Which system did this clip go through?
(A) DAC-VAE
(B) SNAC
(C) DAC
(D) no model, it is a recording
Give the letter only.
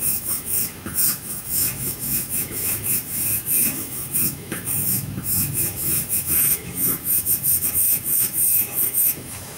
A